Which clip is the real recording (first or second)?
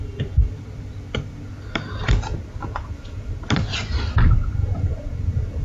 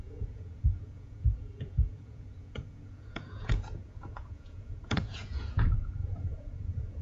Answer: first